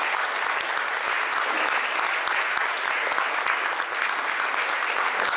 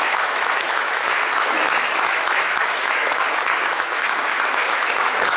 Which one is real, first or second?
first